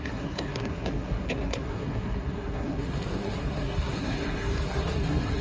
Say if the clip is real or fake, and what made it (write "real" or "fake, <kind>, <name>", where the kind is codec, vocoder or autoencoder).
fake, codec, SNAC